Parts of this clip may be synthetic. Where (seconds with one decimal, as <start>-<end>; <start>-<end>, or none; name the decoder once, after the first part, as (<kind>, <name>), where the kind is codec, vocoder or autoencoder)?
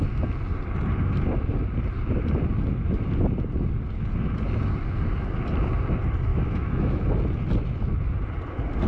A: 6.3-7.0 (autoencoder, DAC-VAE)